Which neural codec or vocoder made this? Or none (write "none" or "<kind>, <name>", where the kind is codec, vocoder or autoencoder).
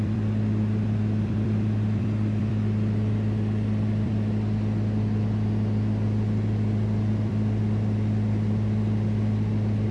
vocoder, BigVGAN v2